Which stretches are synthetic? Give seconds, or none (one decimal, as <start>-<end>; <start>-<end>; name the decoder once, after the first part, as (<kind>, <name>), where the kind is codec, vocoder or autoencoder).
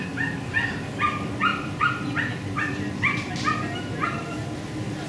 1.5-3.3 (vocoder, BigVGAN v2); 4.0-5.1